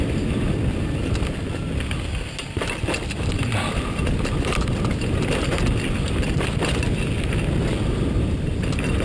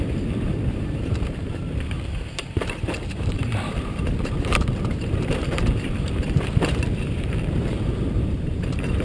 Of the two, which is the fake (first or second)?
second